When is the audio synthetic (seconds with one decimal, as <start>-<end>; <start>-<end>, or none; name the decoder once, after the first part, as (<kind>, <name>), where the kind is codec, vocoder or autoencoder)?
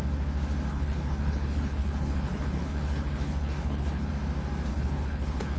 0.7-4.1 (codec, HILCodec); 4.7-5.6